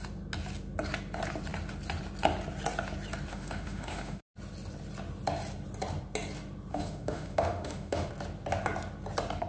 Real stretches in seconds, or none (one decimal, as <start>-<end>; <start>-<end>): 0.0-3.3; 4.2-6.7; 8.1-9.5